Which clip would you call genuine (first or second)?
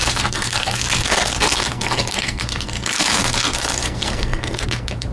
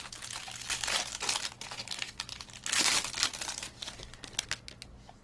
second